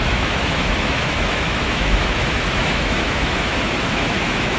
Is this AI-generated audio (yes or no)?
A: yes